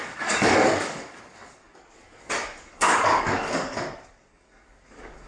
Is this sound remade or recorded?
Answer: remade